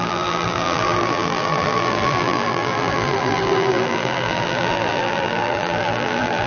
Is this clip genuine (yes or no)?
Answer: no